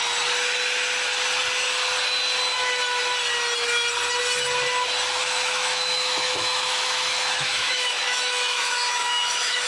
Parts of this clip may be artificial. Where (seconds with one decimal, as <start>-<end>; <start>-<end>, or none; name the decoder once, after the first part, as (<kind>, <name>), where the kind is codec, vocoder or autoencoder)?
5.2-9.7 (autoencoder, DAC-VAE)